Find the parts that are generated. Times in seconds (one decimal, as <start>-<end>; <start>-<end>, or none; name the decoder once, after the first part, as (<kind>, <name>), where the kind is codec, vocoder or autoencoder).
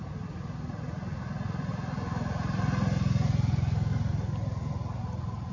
none